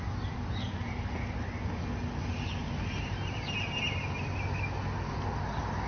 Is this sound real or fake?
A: real